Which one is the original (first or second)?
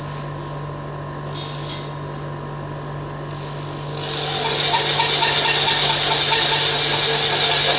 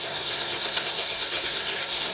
first